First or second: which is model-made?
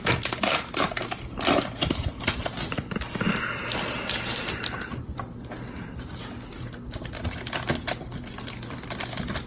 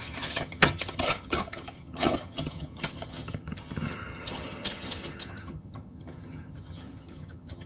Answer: second